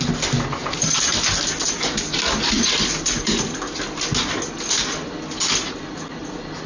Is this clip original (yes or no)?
yes